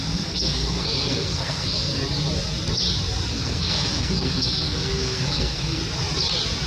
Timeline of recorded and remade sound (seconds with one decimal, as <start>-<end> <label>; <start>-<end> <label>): 0.0-2.0 remade; 2.0-3.3 recorded; 3.3-5.8 remade; 5.8-6.7 recorded